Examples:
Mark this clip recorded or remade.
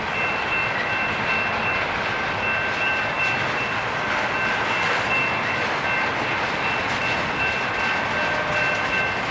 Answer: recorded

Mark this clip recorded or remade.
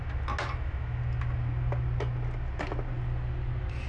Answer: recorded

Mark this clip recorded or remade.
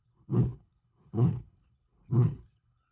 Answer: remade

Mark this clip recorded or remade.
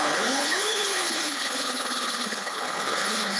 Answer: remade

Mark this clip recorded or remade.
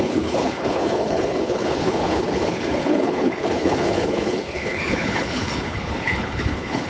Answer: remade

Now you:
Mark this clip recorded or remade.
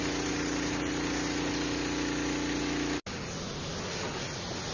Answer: recorded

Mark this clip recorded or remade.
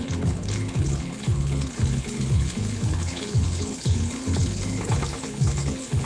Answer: remade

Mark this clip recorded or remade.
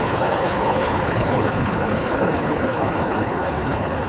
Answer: remade